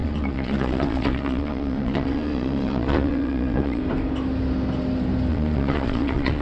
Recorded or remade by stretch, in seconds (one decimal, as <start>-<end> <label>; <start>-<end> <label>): 0.0-3.8 remade; 3.8-5.3 recorded; 5.3-6.4 remade